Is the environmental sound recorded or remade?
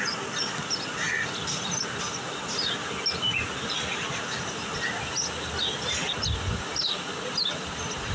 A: recorded